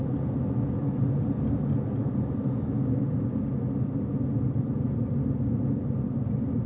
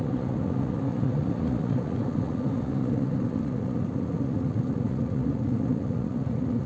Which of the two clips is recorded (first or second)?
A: first